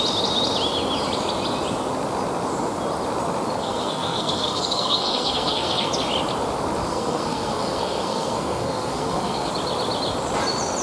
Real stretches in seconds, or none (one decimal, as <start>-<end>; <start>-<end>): 0.0-3.6; 5.9-6.9; 9.5-10.8